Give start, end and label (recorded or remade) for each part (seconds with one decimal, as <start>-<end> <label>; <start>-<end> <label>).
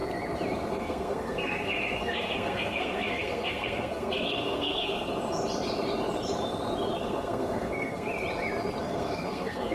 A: 0.0-0.7 recorded; 0.7-5.1 remade; 5.1-7.0 recorded; 7.0-8.1 remade; 8.1-8.8 recorded; 8.8-9.7 remade